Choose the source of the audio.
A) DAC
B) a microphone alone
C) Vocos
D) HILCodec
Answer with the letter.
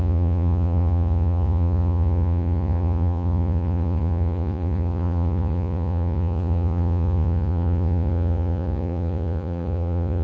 C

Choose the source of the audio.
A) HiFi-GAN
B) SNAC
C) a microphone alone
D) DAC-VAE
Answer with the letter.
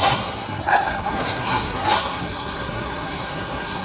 B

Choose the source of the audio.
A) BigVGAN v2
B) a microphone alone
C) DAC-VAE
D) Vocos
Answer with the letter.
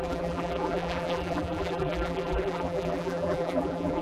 A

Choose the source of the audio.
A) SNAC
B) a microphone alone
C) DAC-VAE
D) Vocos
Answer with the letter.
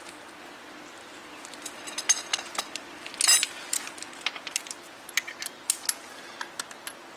B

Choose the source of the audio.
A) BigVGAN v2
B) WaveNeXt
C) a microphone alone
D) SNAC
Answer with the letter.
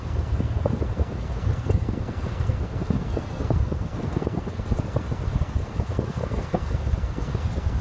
D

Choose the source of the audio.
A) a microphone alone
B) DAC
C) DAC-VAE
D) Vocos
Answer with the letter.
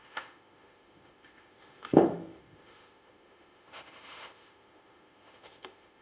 C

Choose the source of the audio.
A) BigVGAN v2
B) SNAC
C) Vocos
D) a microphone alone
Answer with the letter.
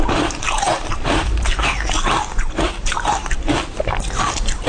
A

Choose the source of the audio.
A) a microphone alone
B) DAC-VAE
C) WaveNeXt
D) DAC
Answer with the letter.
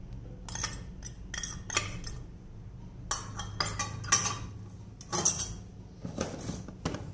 A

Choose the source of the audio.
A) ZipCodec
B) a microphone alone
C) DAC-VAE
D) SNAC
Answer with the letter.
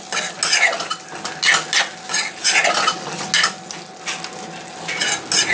B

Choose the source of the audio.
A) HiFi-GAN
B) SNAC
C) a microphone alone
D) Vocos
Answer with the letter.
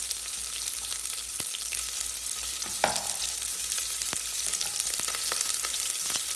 C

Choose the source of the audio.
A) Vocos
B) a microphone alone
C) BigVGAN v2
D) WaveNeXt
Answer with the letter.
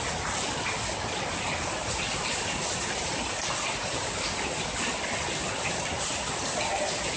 B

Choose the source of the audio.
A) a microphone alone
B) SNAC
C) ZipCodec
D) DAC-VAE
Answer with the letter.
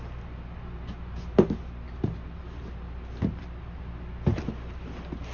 A